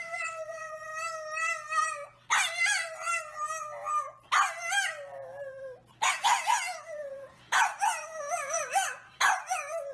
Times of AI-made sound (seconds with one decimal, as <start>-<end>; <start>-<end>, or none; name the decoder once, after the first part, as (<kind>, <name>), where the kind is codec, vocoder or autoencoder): 0.0-0.9 (vocoder, Vocos); 6.1-9.9